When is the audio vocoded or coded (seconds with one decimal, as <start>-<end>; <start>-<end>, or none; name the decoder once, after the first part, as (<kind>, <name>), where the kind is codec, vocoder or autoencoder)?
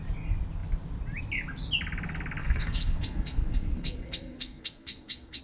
2.4-5.4 (codec, SNAC)